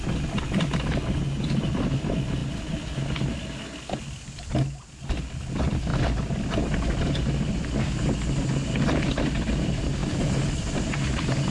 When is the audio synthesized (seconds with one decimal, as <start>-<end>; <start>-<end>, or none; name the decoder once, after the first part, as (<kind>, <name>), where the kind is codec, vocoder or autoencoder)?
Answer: none